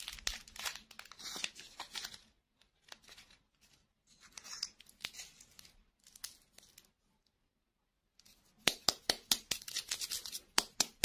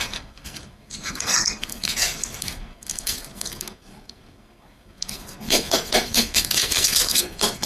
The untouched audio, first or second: first